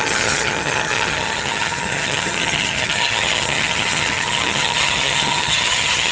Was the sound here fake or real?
fake